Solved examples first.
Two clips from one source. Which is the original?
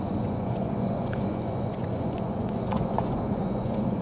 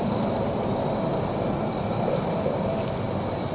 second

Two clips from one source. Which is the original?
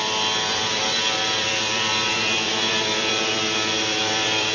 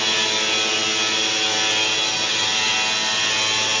second